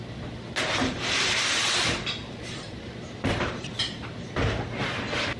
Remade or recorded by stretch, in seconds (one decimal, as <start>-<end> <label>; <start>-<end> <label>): 0.0-0.8 recorded; 0.8-1.8 remade; 1.8-2.2 recorded; 2.2-4.1 remade; 4.1-5.4 recorded